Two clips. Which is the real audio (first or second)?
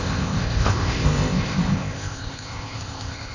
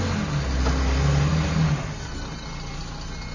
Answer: second